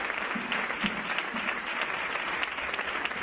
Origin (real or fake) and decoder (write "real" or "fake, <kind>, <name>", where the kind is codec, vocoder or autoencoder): real